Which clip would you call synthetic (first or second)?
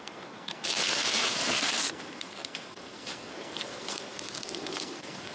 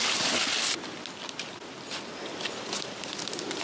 first